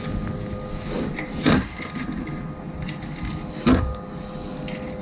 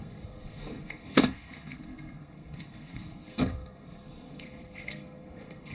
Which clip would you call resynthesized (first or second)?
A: second